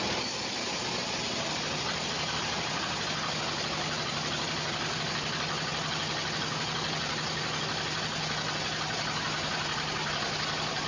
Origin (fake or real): real